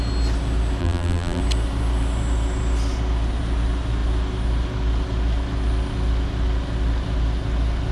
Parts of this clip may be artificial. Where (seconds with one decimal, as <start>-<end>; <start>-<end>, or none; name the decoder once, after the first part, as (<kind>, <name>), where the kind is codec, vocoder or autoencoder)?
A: 0.8-1.4 (vocoder, BigVGAN v2)